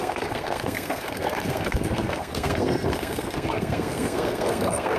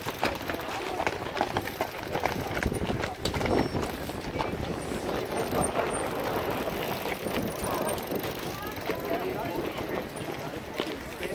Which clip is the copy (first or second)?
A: first